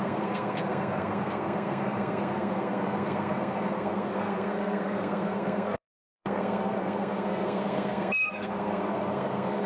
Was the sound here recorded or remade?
remade